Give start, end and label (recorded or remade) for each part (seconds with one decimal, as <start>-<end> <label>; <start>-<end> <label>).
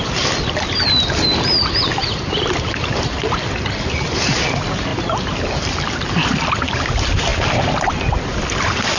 0.0-4.9 recorded; 4.9-5.7 remade; 5.7-7.3 recorded; 7.3-8.1 remade; 8.1-9.0 recorded